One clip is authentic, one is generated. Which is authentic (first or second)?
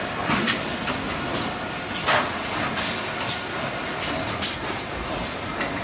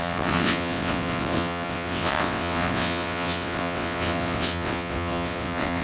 first